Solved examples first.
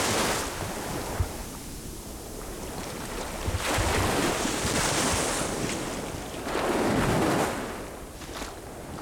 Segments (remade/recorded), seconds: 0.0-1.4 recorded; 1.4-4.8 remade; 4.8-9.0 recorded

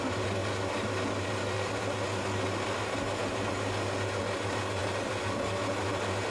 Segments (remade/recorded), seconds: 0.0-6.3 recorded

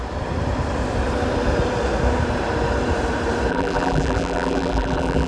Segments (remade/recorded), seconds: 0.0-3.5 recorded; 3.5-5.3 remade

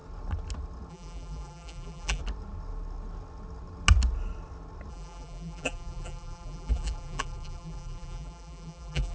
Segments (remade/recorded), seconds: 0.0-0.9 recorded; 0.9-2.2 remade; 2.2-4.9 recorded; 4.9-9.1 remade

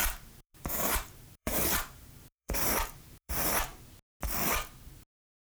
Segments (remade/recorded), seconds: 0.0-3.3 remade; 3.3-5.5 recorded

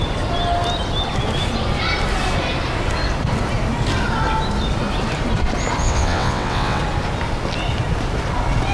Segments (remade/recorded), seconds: 0.0-5.8 recorded; 5.8-6.8 remade; 6.8-8.7 recorded

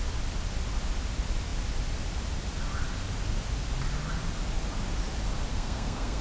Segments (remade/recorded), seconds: 0.0-5.5 recorded; 5.5-6.2 remade